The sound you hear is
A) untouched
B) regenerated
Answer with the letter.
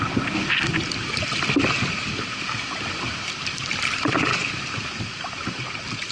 A